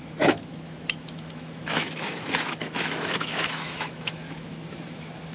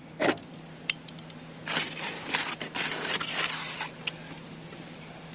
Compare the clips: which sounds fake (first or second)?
first